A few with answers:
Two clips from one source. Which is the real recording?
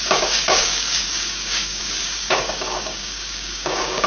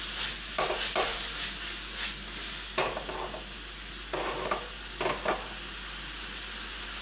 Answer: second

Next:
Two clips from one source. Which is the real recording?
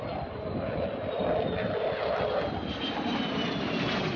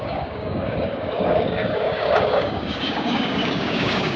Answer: first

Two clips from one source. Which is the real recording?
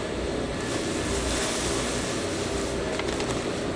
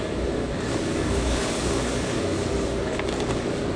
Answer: first